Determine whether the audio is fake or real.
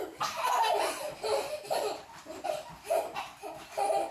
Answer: fake